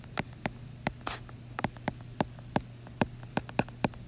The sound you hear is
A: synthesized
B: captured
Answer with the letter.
B